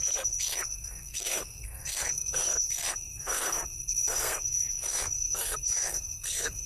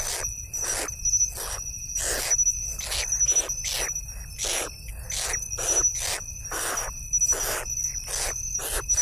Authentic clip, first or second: second